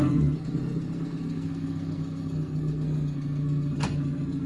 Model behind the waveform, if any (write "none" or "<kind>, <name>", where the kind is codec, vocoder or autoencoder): codec, SNAC